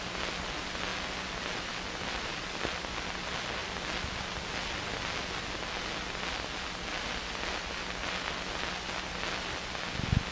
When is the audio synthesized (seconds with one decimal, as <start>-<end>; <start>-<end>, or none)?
none